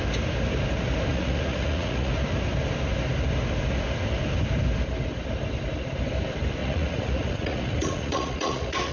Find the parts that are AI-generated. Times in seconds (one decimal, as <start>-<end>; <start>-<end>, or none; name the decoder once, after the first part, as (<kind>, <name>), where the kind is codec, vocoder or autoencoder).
1.1-2.1 (vocoder, Vocos); 6.6-8.9